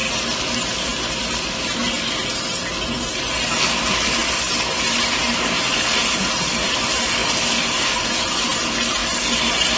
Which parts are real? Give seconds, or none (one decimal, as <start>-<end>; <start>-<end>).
0.0-9.8